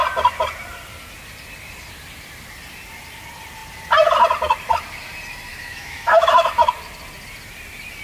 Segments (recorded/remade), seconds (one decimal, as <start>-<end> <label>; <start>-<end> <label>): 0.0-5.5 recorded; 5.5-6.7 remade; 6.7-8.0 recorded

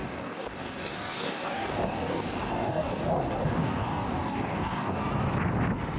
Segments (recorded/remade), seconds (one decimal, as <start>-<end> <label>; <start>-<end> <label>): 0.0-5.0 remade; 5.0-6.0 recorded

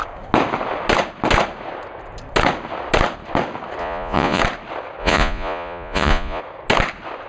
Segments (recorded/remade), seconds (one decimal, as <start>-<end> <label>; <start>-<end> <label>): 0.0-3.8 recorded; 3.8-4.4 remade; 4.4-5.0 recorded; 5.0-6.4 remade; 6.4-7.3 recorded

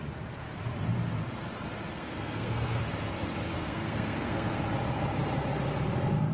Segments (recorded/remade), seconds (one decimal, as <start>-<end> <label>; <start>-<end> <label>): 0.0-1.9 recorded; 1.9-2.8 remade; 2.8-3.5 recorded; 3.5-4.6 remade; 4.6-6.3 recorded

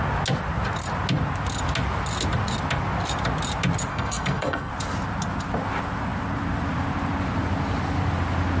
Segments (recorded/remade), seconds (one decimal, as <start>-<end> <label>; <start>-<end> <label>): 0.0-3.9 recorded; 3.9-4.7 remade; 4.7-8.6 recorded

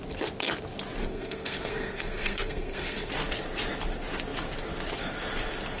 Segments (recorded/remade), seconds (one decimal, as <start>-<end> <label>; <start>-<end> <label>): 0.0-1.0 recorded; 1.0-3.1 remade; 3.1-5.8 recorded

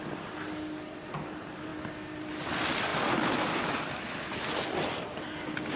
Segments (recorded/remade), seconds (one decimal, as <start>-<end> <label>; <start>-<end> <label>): 0.0-5.8 recorded

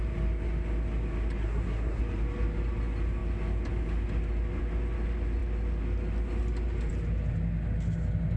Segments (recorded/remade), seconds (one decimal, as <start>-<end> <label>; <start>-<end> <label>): 0.0-1.4 recorded; 1.4-2.0 remade; 2.0-8.4 recorded